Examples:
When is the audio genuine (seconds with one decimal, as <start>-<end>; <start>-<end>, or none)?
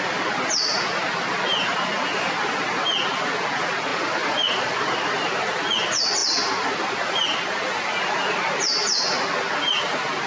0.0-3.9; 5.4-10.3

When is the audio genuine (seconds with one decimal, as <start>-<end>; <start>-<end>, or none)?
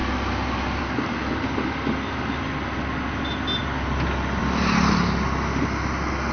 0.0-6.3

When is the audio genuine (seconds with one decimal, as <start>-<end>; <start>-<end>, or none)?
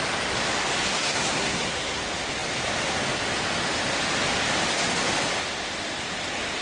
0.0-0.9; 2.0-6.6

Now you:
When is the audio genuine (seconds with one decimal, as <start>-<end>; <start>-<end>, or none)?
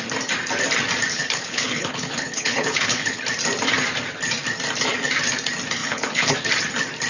0.0-1.1; 3.2-5.8; 6.3-7.1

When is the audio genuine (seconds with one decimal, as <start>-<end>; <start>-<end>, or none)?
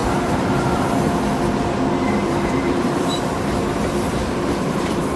1.2-2.2; 3.2-4.2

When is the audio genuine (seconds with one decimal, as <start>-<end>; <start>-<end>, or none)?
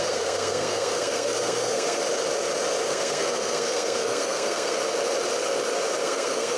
2.0-2.9; 4.8-6.0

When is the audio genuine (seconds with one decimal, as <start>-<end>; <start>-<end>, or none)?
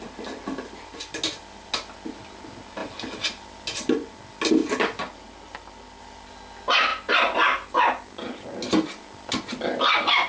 0.0-10.3